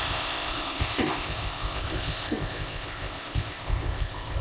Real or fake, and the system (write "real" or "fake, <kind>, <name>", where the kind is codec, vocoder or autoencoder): fake, codec, ZipCodec